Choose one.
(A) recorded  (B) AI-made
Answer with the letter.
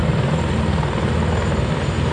A